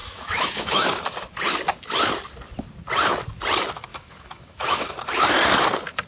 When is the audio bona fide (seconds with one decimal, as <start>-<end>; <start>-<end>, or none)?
1.0-3.9; 5.0-6.1